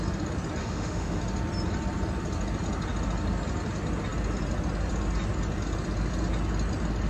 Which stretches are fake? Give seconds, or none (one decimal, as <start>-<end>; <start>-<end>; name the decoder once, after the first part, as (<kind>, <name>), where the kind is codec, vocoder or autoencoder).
0.6-1.2 (autoencoder, DAC-VAE)